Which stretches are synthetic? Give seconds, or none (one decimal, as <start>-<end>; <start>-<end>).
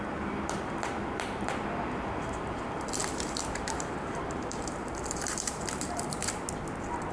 3.0-6.4